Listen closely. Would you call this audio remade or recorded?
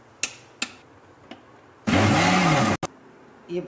recorded